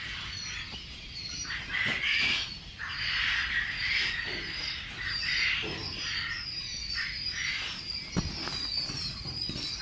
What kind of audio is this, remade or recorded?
recorded